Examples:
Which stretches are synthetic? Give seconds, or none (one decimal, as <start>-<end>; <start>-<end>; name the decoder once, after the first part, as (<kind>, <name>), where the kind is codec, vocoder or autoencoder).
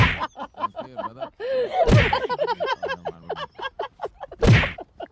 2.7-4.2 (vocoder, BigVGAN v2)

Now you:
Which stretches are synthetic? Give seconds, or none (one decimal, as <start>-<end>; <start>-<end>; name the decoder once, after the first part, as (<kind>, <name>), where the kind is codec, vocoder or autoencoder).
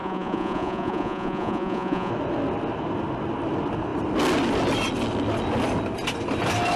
0.0-2.1 (vocoder, Vocos)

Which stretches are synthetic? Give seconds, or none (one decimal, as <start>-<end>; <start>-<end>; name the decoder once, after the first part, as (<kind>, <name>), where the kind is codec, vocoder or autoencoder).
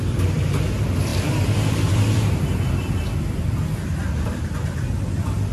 none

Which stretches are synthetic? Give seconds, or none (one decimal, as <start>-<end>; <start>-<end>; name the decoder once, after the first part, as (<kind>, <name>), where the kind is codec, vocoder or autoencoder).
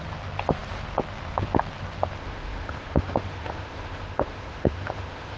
2.2-5.4 (autoencoder, DAC-VAE)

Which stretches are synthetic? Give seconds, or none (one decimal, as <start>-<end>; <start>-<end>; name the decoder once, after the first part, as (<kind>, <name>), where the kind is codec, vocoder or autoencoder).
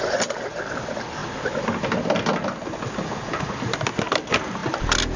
none